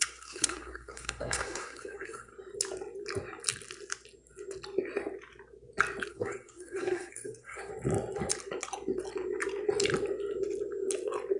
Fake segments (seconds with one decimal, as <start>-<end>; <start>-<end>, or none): 0.0-2.3; 6.1-7.7